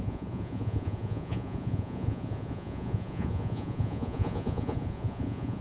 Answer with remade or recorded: remade